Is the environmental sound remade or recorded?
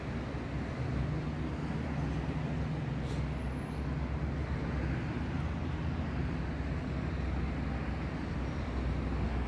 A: recorded